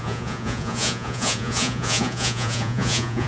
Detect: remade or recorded remade